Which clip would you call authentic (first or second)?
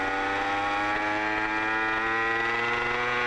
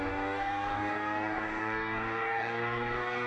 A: first